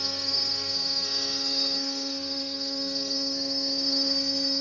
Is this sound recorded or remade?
remade